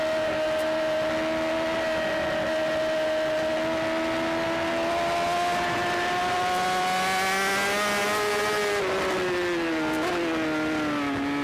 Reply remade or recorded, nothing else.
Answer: recorded